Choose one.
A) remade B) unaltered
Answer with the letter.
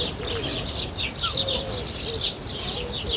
B